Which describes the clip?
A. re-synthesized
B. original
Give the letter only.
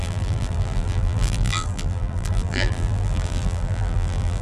A